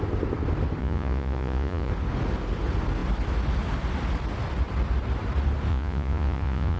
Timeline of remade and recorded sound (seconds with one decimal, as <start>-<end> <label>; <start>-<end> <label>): 0.0-0.8 recorded; 0.8-1.9 remade; 1.9-5.7 recorded; 5.7-6.8 remade